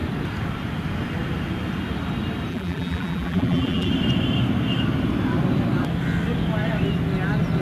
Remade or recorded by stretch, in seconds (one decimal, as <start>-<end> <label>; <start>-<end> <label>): 0.0-2.5 recorded; 2.5-3.9 remade; 3.9-7.6 recorded